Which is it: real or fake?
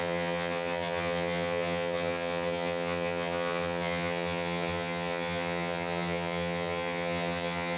fake